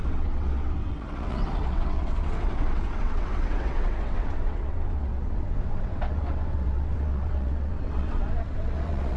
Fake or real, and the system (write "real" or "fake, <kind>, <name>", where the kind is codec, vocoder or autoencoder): fake, vocoder, WaveNeXt